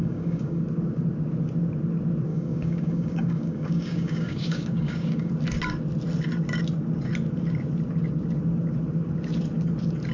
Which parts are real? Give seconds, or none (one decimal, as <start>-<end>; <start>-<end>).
0.6-2.3; 5.3-10.1